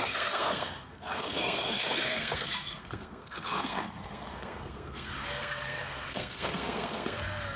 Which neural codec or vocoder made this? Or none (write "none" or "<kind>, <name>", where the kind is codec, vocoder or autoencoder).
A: codec, SNAC